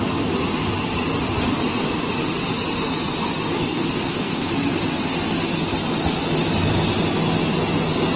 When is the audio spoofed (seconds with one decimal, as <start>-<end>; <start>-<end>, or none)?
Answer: 3.6-4.5